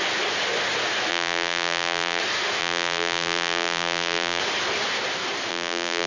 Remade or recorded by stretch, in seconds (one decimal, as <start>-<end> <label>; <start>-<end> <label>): 0.0-1.1 recorded; 1.1-2.2 remade; 2.2-2.6 recorded; 2.6-4.4 remade; 4.4-5.5 recorded; 5.5-6.1 remade